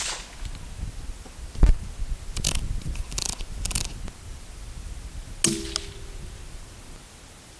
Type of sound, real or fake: real